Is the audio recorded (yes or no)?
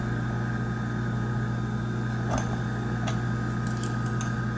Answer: yes